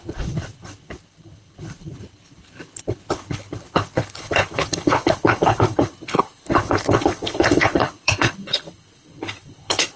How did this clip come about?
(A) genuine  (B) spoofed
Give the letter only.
B